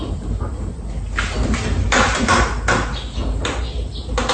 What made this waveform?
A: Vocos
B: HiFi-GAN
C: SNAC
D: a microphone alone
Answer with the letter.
D